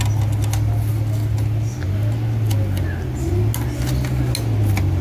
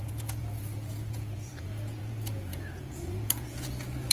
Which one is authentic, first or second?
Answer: first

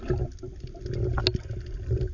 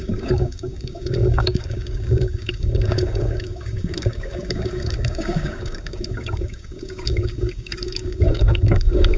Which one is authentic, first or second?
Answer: first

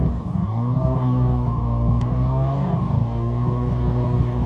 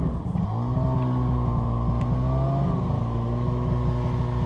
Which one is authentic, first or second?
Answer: second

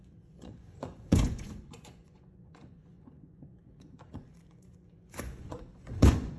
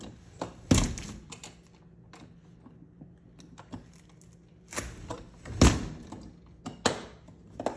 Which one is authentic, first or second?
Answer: second